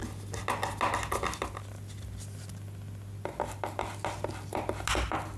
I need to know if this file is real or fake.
real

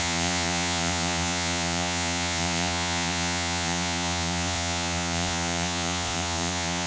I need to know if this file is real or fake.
fake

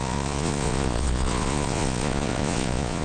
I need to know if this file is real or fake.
fake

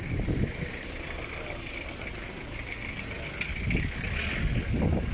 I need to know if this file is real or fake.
real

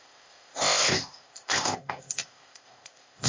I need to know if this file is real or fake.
fake